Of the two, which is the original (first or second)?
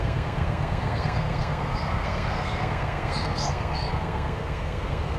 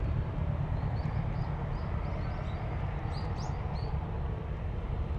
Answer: second